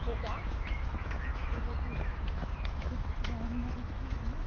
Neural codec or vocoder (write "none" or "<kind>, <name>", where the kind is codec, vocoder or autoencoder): autoencoder, DAC-VAE